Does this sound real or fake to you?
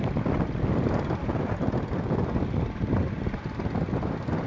real